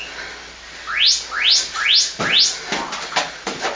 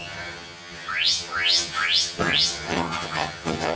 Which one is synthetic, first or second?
second